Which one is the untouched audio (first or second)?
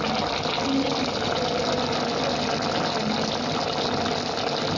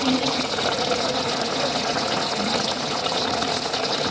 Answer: first